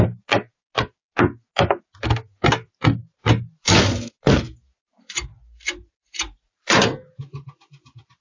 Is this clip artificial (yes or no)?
no